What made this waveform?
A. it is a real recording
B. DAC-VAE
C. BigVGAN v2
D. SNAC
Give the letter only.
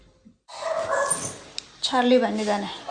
A